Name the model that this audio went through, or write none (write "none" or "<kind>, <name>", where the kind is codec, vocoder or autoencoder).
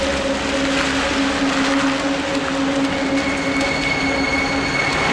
none